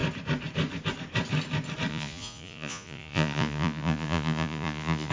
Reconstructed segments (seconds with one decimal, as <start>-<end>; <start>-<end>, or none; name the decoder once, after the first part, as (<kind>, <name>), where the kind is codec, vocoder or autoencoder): 1.9-5.1 (vocoder, Vocos)